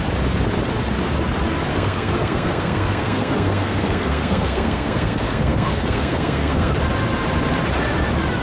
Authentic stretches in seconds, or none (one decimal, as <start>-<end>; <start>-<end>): 0.0-1.7; 6.7-8.4